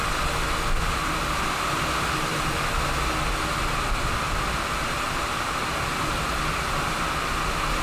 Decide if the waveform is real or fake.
real